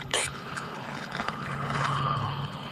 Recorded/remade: remade